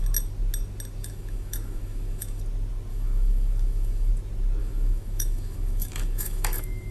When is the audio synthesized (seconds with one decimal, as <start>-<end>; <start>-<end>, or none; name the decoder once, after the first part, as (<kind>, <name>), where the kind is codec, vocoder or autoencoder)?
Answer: 1.0-2.4 (autoencoder, DAC-VAE); 2.9-4.1; 4.6-6.9